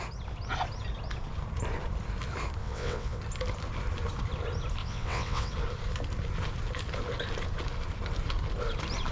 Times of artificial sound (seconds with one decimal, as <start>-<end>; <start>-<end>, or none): 2.6-3.2; 4.8-5.5